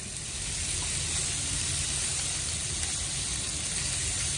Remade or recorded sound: recorded